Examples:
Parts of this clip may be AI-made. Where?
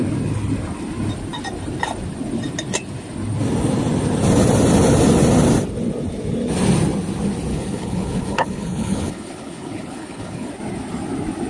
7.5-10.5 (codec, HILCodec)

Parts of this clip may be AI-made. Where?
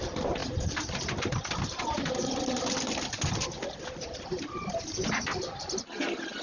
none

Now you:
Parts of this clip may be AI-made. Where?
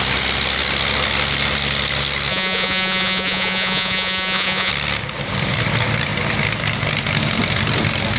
2.3-4.7 (vocoder, Vocos)